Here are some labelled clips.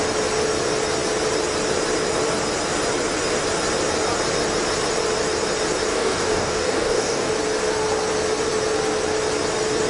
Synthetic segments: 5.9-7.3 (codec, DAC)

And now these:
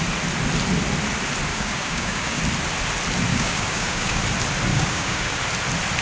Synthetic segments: 1.5-2.4 (codec, DAC); 3.3-4.2; 4.7-5.4

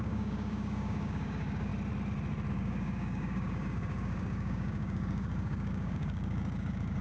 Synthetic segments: 0.0-1.7 (codec, DAC); 2.5-7.0

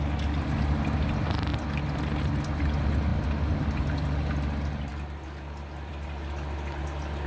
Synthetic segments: none

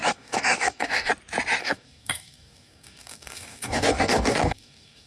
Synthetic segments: 0.0-1.1 (codec, DAC); 1.6-5.1

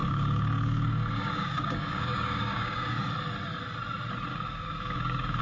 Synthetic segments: 0.0-3.1 (codec, DAC); 4.3-5.4

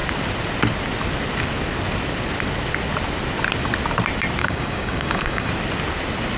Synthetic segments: 4.4-5.5 (codec, DAC)